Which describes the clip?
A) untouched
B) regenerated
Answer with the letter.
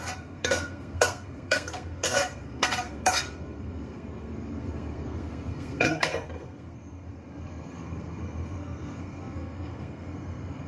B